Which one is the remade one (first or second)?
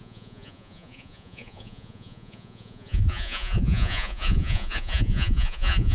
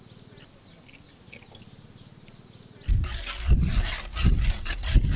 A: first